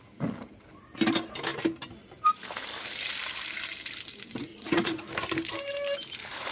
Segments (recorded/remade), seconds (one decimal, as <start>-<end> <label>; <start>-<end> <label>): 0.0-4.5 recorded; 4.5-5.1 remade; 5.1-6.5 recorded